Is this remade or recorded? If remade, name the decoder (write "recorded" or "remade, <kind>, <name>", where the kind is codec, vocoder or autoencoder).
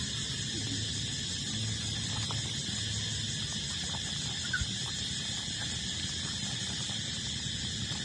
recorded